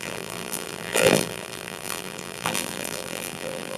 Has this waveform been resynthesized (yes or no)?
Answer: yes